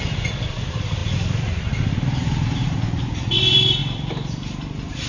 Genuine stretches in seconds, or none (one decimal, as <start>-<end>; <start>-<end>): none